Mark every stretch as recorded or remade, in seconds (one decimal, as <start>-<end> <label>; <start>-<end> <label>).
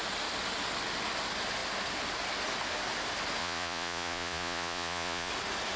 0.0-3.4 recorded; 3.4-5.3 remade; 5.3-5.8 recorded